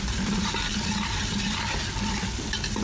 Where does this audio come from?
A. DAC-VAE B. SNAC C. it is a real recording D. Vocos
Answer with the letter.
C